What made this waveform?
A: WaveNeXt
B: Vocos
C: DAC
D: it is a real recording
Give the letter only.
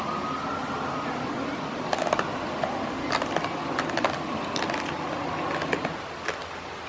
D